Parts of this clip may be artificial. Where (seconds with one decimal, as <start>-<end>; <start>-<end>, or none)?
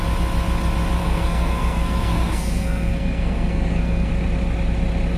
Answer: 1.0-4.1